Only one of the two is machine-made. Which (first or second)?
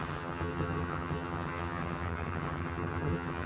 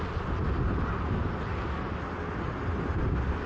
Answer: first